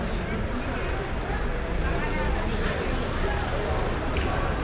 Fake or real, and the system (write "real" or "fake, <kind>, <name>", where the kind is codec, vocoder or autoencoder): real